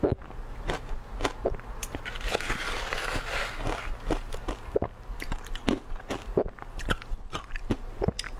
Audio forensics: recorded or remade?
recorded